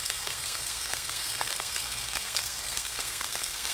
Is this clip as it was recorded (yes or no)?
no